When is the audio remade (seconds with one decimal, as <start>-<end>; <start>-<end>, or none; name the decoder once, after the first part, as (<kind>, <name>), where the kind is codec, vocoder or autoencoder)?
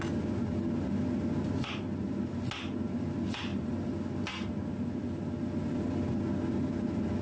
none